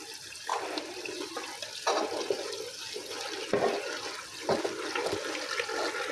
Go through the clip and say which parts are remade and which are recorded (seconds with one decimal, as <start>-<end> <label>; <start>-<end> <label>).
0.0-6.1 recorded